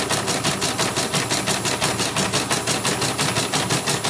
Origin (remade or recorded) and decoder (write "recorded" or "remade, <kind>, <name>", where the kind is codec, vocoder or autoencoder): recorded